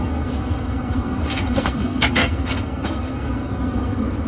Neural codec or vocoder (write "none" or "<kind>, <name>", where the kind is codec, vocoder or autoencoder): codec, SNAC